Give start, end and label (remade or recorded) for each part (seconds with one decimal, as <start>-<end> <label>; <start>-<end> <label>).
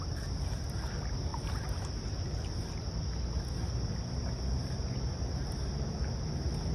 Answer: 0.0-6.7 recorded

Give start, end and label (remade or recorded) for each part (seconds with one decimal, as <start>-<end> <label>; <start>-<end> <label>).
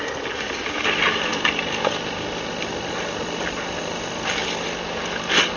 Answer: 0.0-5.6 recorded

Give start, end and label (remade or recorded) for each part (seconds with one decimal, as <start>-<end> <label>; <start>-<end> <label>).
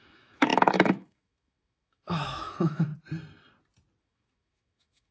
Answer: 0.0-2.9 remade; 2.9-4.0 recorded; 4.0-5.1 remade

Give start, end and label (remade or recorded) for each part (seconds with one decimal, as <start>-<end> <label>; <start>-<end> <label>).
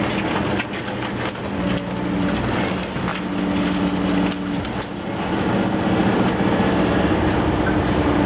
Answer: 0.0-8.3 recorded